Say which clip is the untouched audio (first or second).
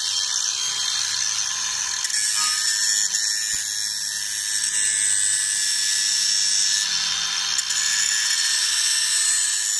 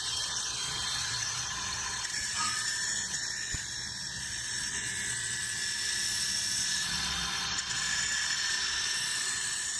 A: first